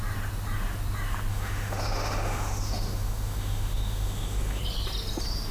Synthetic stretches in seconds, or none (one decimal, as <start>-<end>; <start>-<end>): 1.3-4.6